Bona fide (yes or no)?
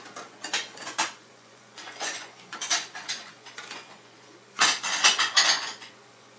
no